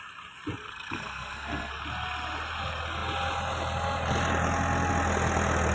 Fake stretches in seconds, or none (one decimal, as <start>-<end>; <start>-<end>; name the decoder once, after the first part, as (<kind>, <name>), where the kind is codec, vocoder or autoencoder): 0.6-1.7 (codec, SNAC)